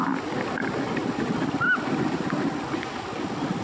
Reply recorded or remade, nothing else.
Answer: recorded